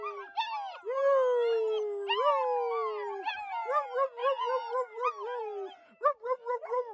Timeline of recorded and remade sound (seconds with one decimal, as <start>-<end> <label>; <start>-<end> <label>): 0.0-6.9 recorded